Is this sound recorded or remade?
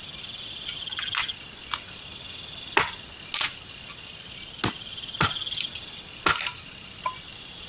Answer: recorded